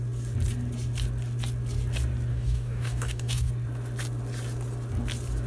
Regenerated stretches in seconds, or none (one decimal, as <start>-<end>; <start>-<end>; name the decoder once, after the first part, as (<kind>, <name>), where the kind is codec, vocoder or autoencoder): 2.3-3.5 (codec, DAC)